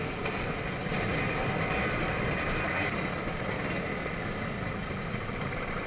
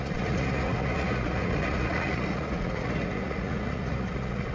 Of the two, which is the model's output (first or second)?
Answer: second